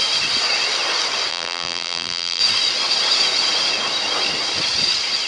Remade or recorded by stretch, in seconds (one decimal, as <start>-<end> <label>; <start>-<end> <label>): 0.0-1.3 recorded; 1.3-2.4 remade; 2.4-5.3 recorded

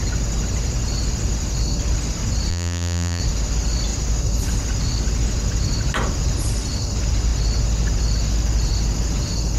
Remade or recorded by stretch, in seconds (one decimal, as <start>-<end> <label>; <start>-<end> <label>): 0.0-2.5 recorded; 2.5-3.2 remade; 3.2-9.6 recorded

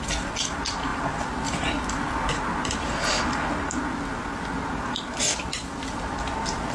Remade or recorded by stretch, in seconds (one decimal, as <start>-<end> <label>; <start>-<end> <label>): 0.0-6.7 recorded

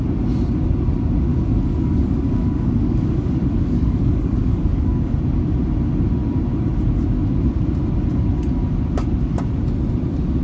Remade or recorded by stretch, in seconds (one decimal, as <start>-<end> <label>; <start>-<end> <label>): 0.0-1.3 recorded; 1.3-5.2 remade; 5.2-10.4 recorded

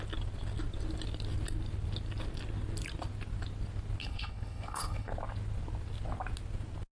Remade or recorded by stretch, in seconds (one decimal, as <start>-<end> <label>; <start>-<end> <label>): 0.0-4.0 recorded; 4.0-5.1 remade; 5.1-7.0 recorded

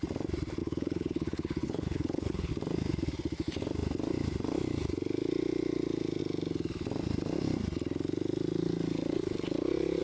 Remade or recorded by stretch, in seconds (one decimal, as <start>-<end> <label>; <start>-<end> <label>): 0.0-0.6 recorded; 0.6-2.5 remade; 2.5-10.0 recorded